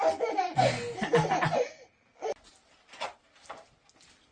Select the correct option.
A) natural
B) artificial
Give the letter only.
A